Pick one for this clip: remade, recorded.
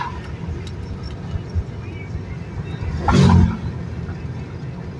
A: recorded